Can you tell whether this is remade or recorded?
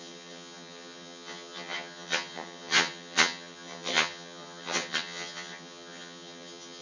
remade